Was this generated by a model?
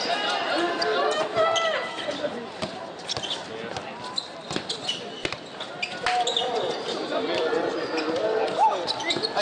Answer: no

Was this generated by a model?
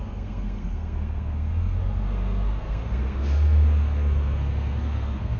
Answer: yes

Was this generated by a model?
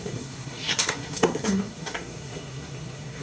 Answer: yes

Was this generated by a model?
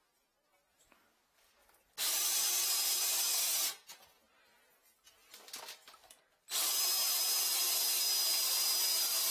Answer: no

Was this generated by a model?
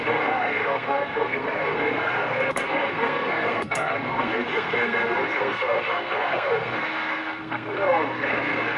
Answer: yes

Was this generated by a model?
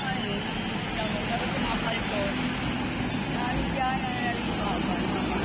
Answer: no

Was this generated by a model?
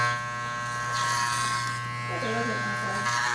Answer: no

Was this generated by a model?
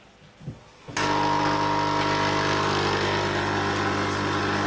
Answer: no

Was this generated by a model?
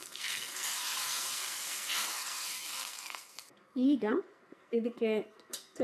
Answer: yes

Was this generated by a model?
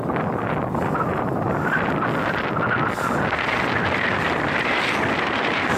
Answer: no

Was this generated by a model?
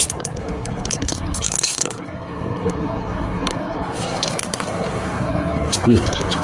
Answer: yes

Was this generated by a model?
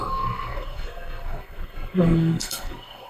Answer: yes